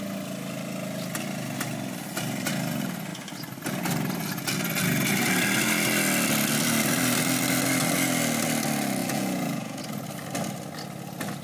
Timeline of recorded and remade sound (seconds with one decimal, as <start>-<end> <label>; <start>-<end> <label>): 0.0-9.0 recorded; 9.0-9.8 remade; 9.8-11.4 recorded